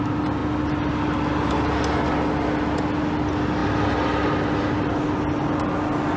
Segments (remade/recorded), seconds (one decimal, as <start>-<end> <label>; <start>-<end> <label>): 0.0-6.2 recorded